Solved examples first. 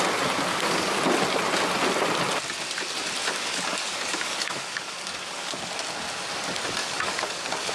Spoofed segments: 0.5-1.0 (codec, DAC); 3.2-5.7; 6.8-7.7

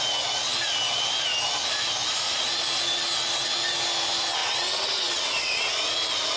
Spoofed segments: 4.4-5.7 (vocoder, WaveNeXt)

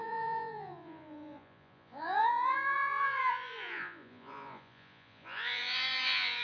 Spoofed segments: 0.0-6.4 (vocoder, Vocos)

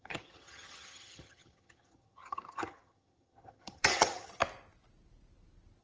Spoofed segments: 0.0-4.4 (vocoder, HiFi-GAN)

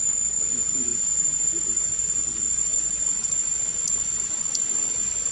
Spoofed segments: 0.9-2.2 (vocoder, Vocos); 2.7-5.3